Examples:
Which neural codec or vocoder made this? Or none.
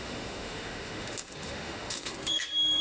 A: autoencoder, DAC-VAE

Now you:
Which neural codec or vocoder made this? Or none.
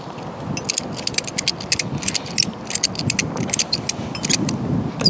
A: none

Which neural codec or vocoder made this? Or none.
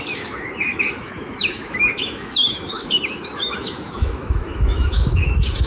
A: autoencoder, DAC-VAE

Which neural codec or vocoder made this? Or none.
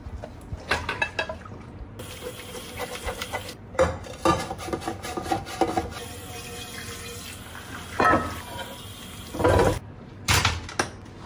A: none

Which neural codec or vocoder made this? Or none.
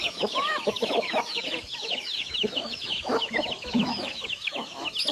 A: autoencoder, DAC-VAE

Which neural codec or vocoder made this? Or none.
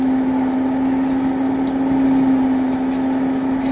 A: none